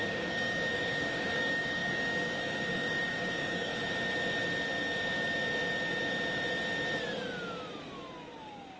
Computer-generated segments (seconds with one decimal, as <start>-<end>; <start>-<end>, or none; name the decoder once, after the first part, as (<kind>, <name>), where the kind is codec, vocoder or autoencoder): 0.0-3.7 (codec, DAC); 8.4-8.8